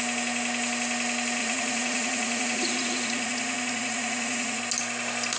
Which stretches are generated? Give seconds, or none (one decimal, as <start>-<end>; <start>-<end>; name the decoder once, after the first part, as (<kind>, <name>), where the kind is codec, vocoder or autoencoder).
1.4-4.6 (vocoder, Vocos)